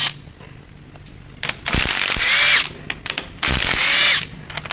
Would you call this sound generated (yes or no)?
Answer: no